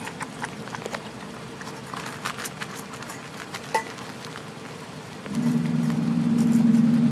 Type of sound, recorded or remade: recorded